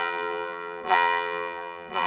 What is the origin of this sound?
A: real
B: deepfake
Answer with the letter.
B